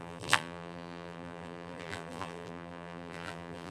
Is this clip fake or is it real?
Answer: fake